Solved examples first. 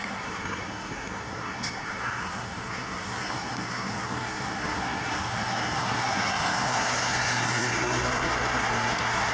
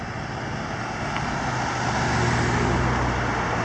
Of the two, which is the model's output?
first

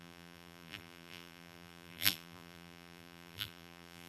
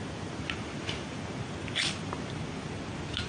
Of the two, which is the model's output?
first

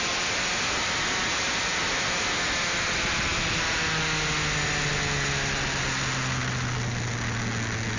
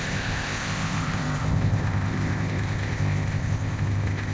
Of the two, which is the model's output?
second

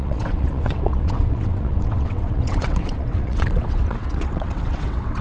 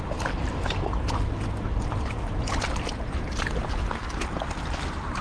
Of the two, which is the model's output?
first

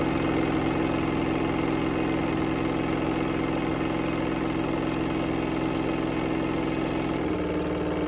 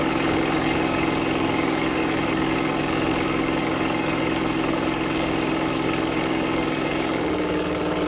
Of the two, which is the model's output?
second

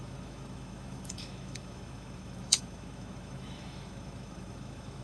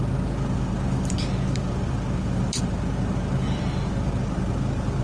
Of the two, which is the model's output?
first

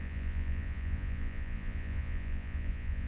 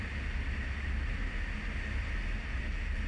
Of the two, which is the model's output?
first